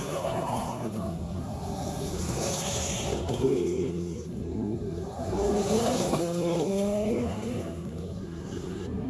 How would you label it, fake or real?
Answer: fake